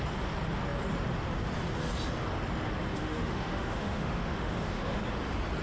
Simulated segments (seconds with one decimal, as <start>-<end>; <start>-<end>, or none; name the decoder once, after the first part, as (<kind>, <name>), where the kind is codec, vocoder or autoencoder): 2.9-5.0 (autoencoder, DAC-VAE)